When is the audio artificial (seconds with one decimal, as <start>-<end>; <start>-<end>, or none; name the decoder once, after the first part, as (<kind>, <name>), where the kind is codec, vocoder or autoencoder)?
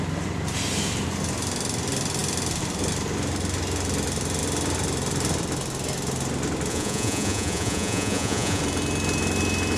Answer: 6.7-8.6 (vocoder, Vocos)